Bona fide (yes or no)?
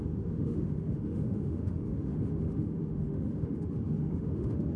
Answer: no